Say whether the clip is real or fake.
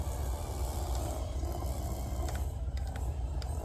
real